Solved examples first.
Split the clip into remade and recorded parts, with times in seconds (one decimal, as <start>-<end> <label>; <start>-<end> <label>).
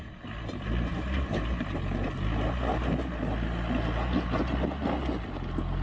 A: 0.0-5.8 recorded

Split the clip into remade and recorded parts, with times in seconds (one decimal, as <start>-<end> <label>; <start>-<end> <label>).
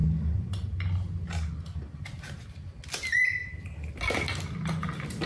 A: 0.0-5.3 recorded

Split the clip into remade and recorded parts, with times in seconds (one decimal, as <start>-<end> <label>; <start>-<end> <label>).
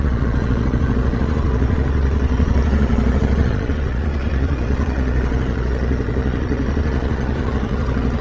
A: 0.0-8.2 remade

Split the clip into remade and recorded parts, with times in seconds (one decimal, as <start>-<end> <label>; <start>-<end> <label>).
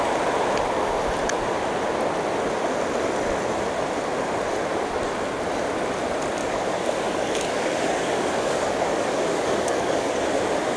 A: 0.0-6.4 recorded; 6.4-10.4 remade; 10.4-10.8 recorded